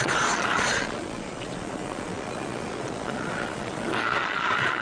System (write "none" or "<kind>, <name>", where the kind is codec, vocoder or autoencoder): vocoder, Vocos